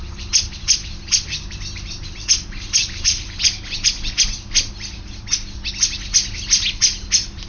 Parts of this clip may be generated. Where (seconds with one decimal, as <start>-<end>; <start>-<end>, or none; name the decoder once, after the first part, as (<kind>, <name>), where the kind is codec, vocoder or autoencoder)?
2.8-3.4 (vocoder, BigVGAN v2)